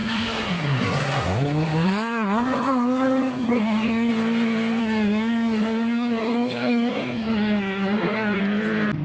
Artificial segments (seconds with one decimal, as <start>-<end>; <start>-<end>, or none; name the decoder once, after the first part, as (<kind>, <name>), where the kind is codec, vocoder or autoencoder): 0.0-4.1 (codec, SNAC); 4.8-8.4